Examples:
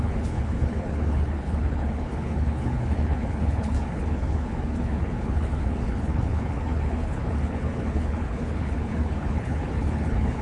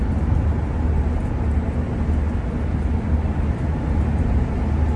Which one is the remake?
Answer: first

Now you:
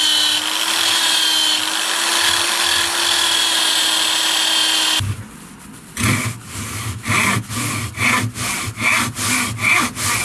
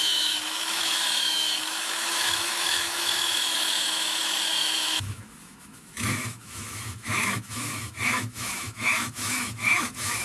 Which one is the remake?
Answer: second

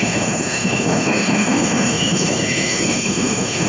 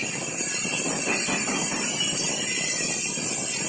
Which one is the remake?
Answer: first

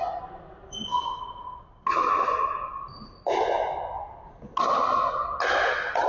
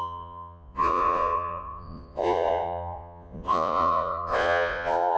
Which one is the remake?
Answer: second